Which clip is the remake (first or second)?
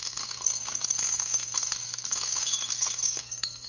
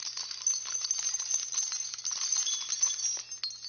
first